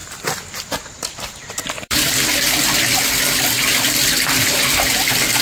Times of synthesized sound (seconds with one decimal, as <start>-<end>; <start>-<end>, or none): 0.0-3.2; 3.7-4.9

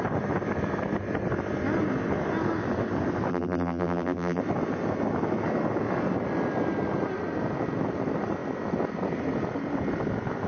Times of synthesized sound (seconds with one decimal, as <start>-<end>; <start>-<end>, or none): 3.3-4.4

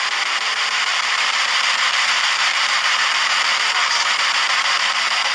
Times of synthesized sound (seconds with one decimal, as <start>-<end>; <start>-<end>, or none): 0.9-4.1

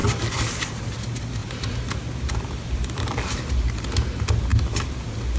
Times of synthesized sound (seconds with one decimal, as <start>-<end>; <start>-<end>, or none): 0.0-0.8; 1.4-3.5

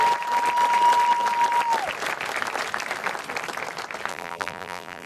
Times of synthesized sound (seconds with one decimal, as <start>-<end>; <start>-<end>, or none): 4.1-5.1